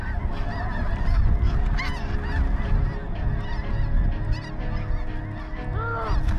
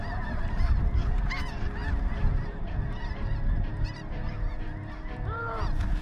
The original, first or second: first